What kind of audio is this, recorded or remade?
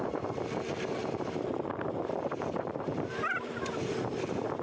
remade